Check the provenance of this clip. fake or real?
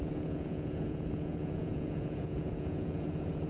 fake